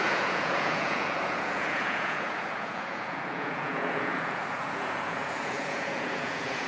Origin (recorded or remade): remade